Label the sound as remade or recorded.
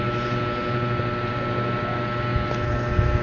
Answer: recorded